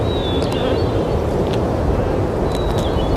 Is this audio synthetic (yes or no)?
no